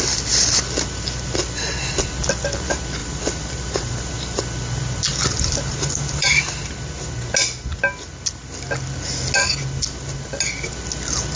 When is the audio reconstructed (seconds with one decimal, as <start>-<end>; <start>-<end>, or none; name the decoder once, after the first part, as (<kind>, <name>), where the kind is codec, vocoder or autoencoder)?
3.0-4.4 (vocoder, BigVGAN v2); 5.1-6.7